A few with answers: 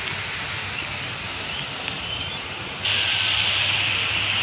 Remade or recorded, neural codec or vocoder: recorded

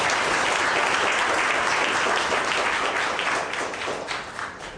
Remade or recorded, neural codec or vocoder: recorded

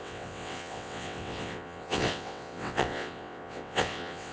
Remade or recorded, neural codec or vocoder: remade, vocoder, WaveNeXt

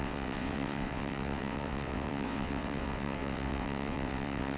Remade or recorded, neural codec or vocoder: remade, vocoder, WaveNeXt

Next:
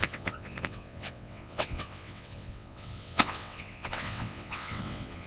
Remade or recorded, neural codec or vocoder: remade, vocoder, WaveNeXt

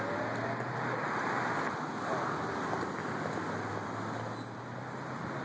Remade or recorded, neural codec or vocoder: recorded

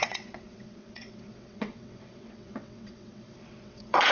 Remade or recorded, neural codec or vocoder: remade, vocoder, WaveNeXt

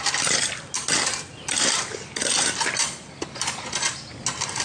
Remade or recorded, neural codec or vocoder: recorded